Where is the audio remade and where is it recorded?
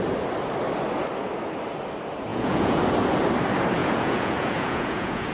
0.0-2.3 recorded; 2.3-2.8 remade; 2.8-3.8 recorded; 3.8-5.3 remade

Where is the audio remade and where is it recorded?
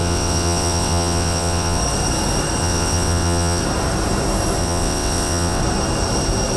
0.0-1.8 remade; 1.8-2.6 recorded; 2.6-3.6 remade; 3.6-4.6 recorded; 4.6-5.6 remade; 5.6-6.6 recorded